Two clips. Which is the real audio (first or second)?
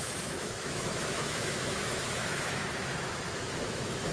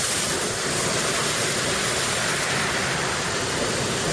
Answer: second